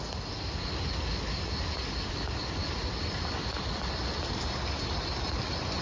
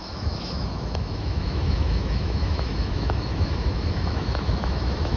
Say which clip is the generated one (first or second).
second